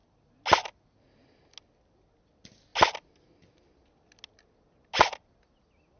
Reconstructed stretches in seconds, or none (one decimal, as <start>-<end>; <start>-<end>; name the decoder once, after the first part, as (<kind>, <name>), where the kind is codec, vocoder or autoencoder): none

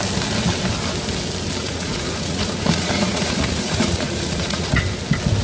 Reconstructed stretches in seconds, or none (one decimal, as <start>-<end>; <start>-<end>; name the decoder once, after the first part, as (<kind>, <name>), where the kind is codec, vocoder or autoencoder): 1.6-4.8 (vocoder, Vocos)

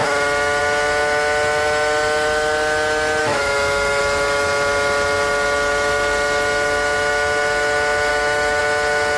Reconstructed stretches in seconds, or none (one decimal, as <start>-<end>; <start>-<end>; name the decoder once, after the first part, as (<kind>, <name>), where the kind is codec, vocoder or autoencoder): 3.2-4.0 (autoencoder, DAC-VAE); 8.1-8.6

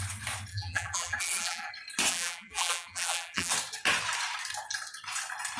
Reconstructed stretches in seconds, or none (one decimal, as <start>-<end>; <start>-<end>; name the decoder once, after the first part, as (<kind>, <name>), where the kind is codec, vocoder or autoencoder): 0.5-1.7 (vocoder, BigVGAN v2); 2.1-3.5